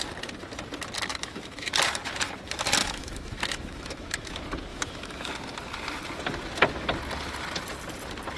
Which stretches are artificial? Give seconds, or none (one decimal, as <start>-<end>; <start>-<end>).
1.1-1.7; 2.8-4.3; 4.7-5.3